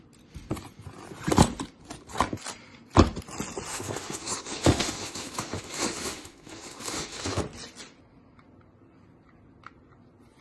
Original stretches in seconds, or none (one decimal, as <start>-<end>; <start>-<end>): 0.0-3.7; 7.4-10.4